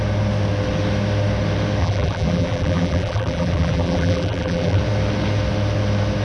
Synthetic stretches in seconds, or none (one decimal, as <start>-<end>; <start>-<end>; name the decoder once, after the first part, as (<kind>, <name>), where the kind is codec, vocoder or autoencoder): 1.8-4.8 (vocoder, BigVGAN v2)